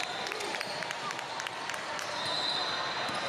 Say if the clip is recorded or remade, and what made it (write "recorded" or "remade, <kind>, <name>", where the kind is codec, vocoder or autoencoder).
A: recorded